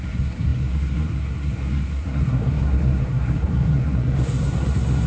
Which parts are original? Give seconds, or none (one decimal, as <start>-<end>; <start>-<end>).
none